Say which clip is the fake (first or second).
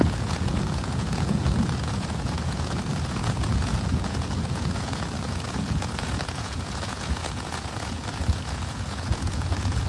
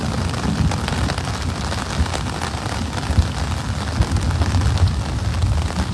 first